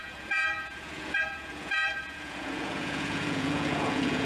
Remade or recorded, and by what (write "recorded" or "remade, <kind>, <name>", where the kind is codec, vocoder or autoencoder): remade, vocoder, Vocos